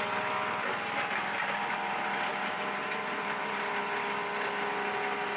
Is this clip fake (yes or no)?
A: no